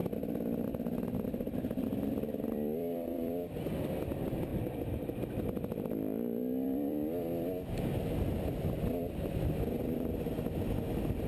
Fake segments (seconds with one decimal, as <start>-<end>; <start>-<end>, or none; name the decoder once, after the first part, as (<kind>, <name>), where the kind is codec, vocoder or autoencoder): 0.0-4.1 (vocoder, BigVGAN v2); 4.5-8.7; 9.8-10.3